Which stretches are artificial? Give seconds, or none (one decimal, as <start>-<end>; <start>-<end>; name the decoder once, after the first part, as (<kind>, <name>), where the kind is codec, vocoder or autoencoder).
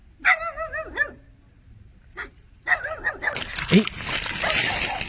none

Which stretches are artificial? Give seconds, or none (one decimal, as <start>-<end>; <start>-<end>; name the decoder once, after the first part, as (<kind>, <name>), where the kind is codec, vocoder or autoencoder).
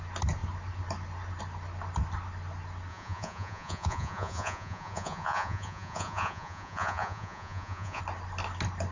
2.9-8.0 (vocoder, Vocos)